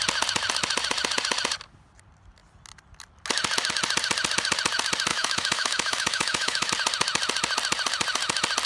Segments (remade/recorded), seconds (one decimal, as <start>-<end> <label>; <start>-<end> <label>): 0.0-5.1 recorded; 5.1-6.7 remade; 6.7-8.7 recorded